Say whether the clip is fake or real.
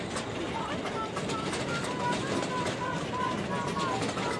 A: real